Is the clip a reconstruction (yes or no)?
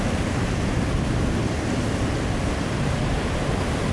no